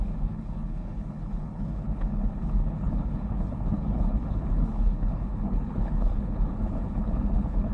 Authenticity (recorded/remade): remade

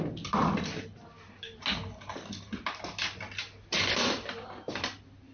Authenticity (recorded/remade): recorded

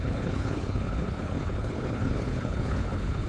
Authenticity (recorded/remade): remade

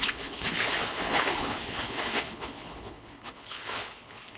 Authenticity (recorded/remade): remade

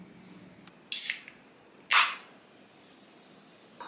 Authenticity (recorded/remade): recorded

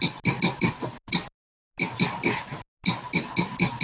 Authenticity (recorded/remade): recorded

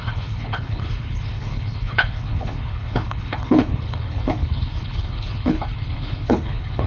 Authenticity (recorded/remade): remade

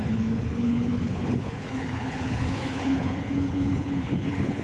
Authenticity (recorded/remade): remade